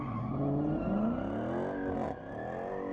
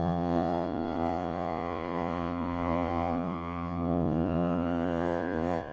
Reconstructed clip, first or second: second